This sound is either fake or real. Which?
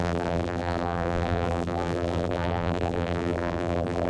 fake